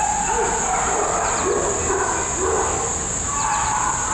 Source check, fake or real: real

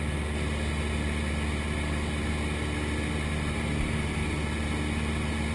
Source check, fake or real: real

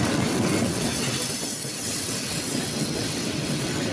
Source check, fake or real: fake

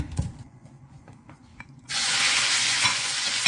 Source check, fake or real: fake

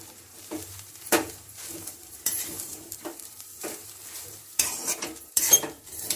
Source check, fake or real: fake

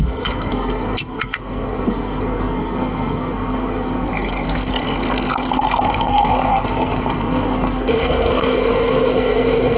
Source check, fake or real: fake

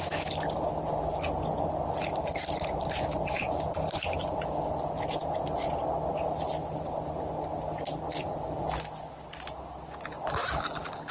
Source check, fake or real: real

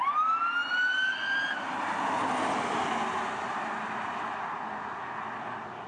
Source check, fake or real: real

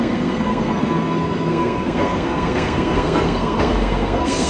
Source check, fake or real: fake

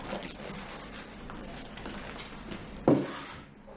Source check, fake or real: real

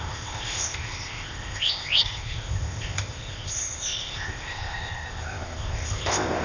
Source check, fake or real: fake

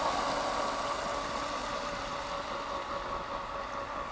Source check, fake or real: real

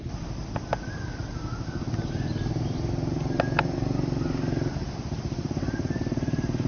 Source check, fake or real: real